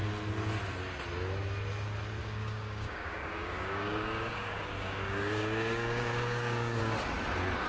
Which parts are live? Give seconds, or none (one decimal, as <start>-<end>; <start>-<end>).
0.0-2.2; 6.8-7.7